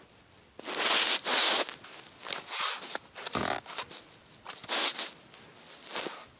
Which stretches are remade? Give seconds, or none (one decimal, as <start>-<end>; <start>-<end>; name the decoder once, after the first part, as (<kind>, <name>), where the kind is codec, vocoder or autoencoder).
0.0-1.7 (vocoder, BigVGAN v2); 5.2-6.4